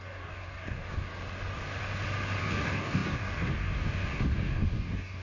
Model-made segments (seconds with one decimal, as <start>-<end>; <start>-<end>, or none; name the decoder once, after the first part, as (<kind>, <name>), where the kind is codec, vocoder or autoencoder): 0.0-1.1 (codec, DAC); 2.4-5.2

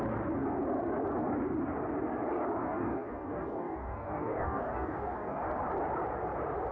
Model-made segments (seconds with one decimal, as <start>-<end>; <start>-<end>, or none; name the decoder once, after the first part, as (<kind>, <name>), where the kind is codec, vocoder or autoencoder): 2.6-5.4 (codec, DAC)

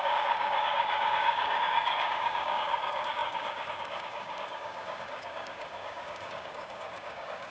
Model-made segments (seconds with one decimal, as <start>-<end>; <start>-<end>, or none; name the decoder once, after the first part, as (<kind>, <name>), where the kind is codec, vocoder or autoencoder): 0.0-7.5 (codec, DAC)

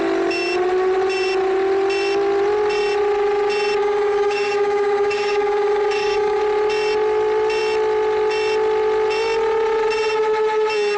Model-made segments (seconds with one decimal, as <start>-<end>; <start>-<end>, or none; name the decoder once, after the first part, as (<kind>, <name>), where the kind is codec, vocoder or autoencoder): 3.8-6.4 (codec, DAC)

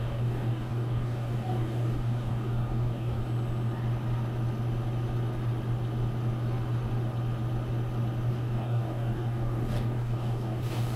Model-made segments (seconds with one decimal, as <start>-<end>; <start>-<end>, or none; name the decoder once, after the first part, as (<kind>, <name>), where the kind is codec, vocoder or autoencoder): 0.0-3.2 (codec, DAC); 8.3-11.0